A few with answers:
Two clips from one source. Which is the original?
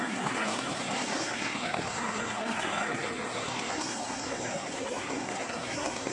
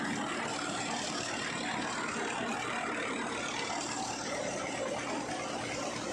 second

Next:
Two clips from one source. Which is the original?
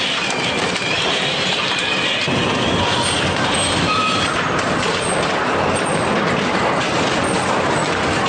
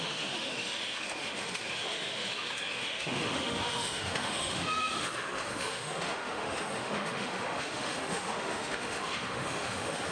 first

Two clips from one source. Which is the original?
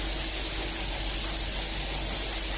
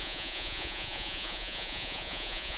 first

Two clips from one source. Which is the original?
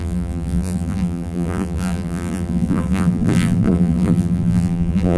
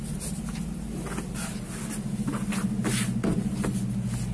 second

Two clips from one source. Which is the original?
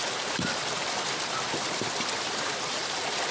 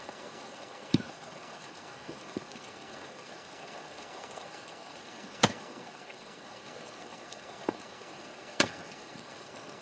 first